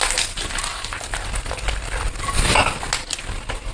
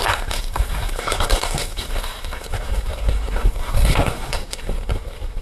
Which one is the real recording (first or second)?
first